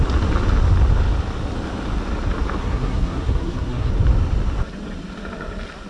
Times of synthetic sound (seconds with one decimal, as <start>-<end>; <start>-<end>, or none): 2.6-3.9